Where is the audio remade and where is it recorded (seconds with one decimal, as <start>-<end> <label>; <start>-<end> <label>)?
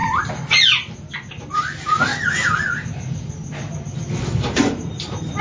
0.0-1.5 recorded; 1.5-2.1 remade; 2.1-3.7 recorded; 3.7-5.4 remade